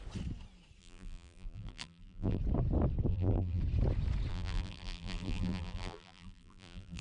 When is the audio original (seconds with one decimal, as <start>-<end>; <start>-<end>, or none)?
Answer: 0.0-0.8; 2.4-3.1; 3.6-4.3